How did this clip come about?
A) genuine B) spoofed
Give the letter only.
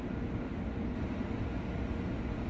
A